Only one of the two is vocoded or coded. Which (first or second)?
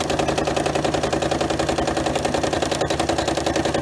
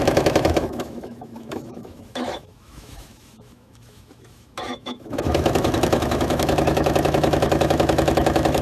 second